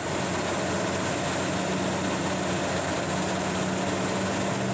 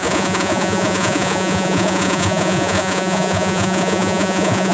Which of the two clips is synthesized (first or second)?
second